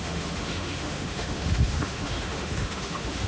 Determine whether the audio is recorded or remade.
remade